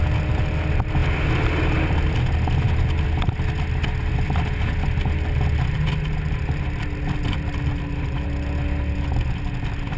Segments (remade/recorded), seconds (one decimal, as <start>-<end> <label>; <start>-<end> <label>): 0.0-10.0 recorded